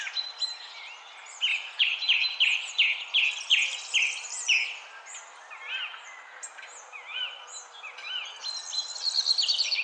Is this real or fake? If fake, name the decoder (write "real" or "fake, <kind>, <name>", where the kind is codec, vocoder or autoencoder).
real